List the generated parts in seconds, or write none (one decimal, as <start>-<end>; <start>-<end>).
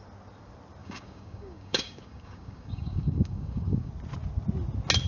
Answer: 0.8-3.9